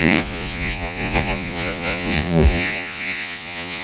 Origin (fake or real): fake